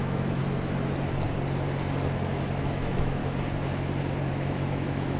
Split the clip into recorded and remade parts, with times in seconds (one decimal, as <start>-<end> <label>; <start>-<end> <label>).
0.0-0.4 remade; 0.4-2.6 recorded; 2.6-3.2 remade; 3.2-4.3 recorded; 4.3-5.2 remade